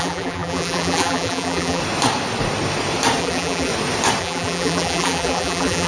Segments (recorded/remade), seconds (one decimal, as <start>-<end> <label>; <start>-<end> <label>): 0.0-1.8 remade; 1.8-3.2 recorded; 3.2-3.7 remade; 3.7-4.2 recorded; 4.2-5.9 remade